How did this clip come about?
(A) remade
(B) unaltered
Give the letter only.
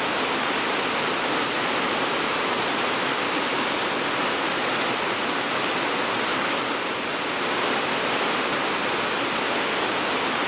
B